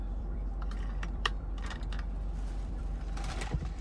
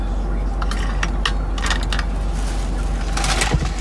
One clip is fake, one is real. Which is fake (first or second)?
first